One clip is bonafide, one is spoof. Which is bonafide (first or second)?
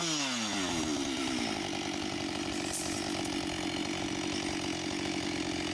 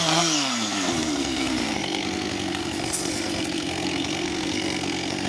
first